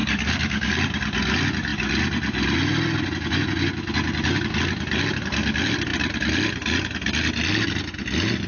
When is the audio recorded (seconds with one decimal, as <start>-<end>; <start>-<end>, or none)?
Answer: 0.7-8.5